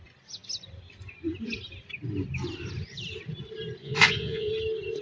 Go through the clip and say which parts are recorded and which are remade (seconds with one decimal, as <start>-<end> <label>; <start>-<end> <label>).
0.0-3.8 recorded; 3.8-4.5 remade; 4.5-5.0 recorded